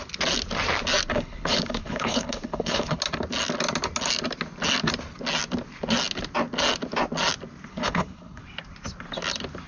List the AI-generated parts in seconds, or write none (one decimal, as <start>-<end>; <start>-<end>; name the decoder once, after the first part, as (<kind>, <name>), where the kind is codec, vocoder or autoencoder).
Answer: 1.1-3.0 (codec, HILCodec); 7.7-8.4